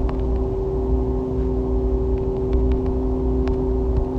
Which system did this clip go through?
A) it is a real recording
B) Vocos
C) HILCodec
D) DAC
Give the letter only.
A